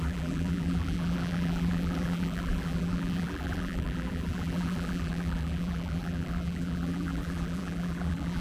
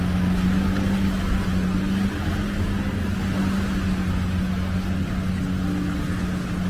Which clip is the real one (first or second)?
second